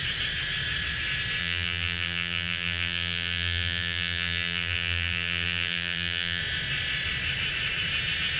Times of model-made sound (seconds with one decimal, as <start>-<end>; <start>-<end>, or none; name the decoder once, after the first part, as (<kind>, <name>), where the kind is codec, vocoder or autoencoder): 1.4-6.4 (vocoder, BigVGAN v2)